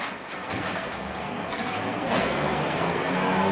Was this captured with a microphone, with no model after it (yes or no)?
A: no